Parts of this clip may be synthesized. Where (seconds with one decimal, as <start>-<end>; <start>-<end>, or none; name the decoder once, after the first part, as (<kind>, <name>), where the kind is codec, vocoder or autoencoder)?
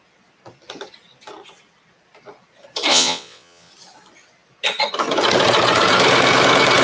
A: 2.9-3.7 (vocoder, WaveNeXt)